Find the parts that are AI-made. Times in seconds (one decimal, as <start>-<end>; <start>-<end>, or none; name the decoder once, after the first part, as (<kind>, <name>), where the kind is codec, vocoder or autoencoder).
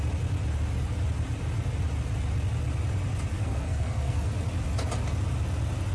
3.3-4.3 (codec, SNAC)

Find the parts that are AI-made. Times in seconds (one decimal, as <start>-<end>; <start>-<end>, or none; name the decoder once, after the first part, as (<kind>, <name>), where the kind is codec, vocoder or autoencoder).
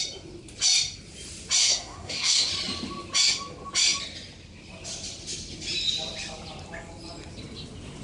1.6-2.5 (codec, SNAC)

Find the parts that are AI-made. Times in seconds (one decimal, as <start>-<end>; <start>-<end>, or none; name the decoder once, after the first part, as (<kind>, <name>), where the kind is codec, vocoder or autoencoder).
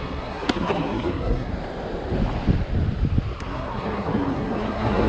0.0-1.5 (codec, SNAC); 3.4-5.1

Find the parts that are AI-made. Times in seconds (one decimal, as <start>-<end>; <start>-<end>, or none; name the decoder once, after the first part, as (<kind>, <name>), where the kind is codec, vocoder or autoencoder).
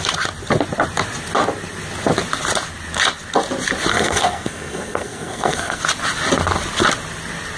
3.9-5.8 (codec, SNAC)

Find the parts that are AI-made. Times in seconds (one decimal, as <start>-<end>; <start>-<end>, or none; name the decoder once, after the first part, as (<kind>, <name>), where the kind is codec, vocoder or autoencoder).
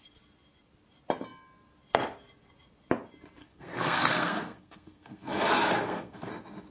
3.4-6.3 (codec, SNAC)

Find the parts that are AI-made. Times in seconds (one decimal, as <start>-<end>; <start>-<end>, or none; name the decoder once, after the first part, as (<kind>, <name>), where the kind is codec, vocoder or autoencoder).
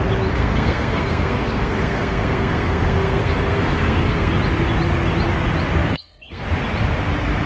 0.4-4.3 (codec, SNAC); 5.8-6.4